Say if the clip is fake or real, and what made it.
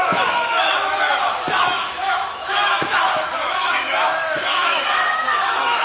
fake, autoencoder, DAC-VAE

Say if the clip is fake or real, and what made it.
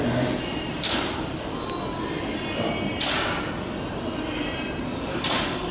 real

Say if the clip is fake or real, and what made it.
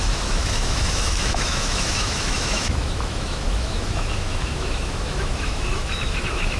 fake, autoencoder, DAC-VAE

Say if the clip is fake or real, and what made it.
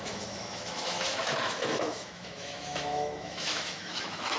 fake, autoencoder, DAC-VAE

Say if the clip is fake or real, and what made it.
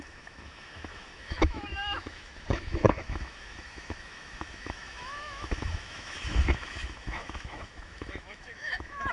fake, autoencoder, DAC-VAE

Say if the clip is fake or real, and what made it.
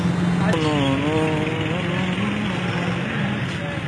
real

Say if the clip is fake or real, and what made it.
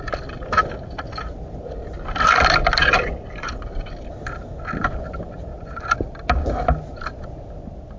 real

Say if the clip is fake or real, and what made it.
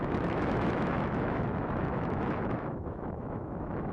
fake, autoencoder, DAC-VAE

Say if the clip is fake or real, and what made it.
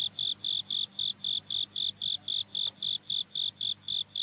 real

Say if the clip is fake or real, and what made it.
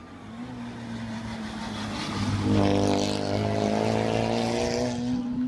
real